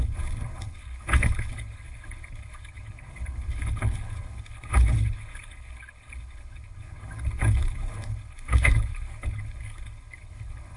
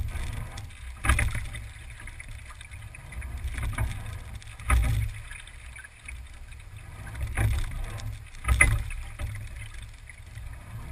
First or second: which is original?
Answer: second